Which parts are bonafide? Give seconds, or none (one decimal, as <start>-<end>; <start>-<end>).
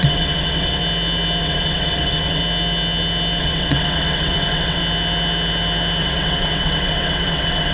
0.8-1.4; 2.4-3.4; 4.8-6.0